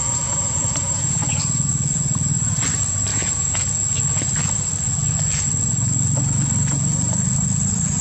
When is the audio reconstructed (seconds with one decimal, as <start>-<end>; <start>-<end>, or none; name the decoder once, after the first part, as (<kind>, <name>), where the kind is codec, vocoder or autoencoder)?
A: 0.0-1.4 (vocoder, Vocos); 3.1-3.7